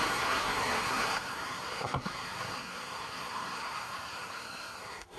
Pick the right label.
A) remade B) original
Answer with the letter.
A